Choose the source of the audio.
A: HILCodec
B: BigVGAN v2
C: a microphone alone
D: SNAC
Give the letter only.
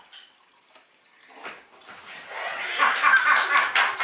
C